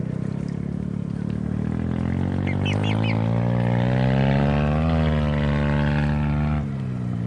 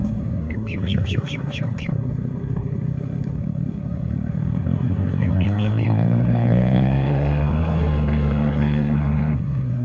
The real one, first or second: first